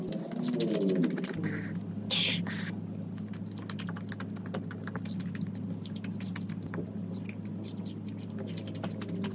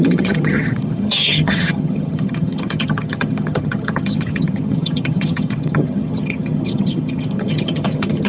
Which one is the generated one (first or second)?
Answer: second